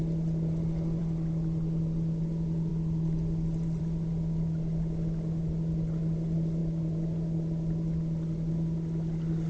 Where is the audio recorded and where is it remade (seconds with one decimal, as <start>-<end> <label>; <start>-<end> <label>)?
0.0-9.5 recorded